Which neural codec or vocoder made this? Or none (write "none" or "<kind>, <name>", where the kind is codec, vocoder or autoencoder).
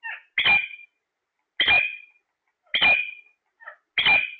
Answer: none